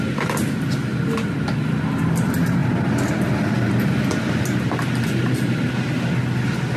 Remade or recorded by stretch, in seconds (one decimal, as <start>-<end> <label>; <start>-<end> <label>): 0.0-6.8 recorded